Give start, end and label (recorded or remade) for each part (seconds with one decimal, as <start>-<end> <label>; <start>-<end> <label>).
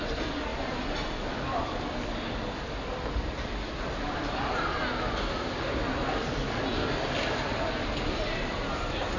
0.0-0.5 recorded; 0.5-5.8 remade; 5.8-6.4 recorded; 6.4-6.9 remade; 6.9-9.2 recorded